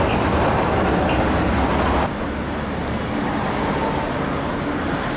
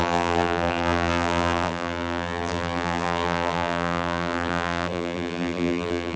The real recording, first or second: first